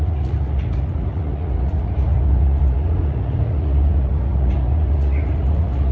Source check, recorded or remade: remade